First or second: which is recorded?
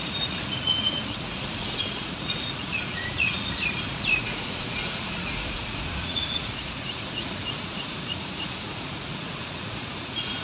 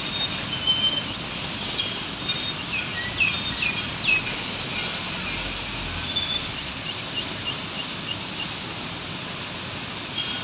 second